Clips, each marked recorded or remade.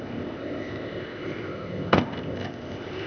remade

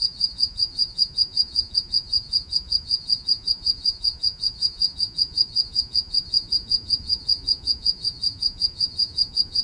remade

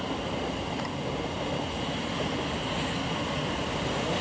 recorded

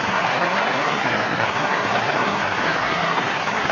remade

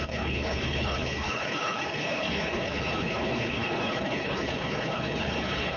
remade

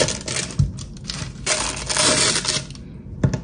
recorded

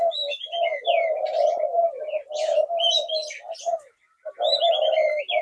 recorded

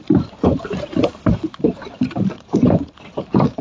remade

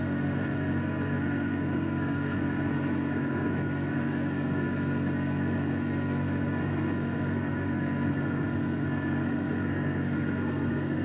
remade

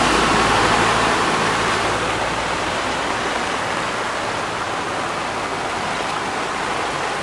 recorded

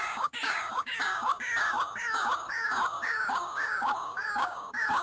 remade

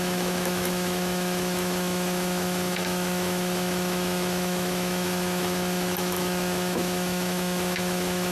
remade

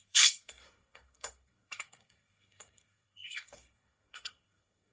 remade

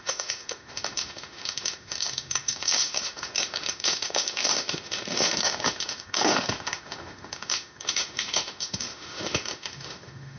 remade